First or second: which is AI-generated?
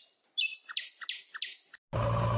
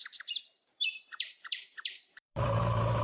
second